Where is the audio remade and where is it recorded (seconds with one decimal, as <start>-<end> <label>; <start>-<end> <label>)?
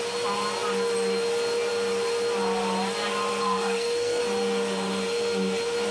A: 0.0-3.3 recorded; 3.3-4.2 remade; 4.2-5.9 recorded